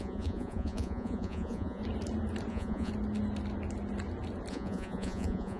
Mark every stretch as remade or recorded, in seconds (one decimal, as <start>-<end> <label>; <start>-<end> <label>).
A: 0.0-1.8 remade; 1.8-2.5 recorded; 2.5-2.9 remade; 2.9-4.5 recorded; 4.5-5.6 remade